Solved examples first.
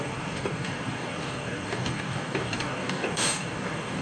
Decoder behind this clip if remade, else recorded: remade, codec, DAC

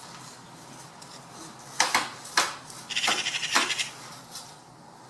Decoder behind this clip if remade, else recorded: recorded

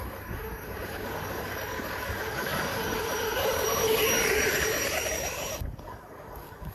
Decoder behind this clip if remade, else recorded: remade, codec, DAC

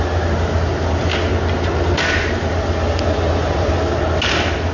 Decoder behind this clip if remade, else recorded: recorded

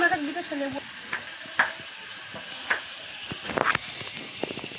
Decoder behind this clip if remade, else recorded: recorded